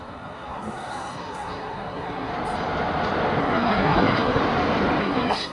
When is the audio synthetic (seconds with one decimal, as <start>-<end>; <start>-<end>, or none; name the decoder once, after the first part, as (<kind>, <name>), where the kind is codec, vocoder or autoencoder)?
0.0-2.3 (codec, SNAC); 3.4-4.4; 5.0-5.5